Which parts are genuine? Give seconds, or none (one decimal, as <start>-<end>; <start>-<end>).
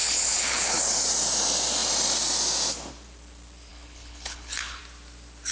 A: 0.9-3.7; 4.8-5.5